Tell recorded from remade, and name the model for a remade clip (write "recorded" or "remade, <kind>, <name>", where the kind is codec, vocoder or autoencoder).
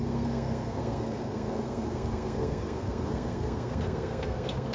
remade, codec, SNAC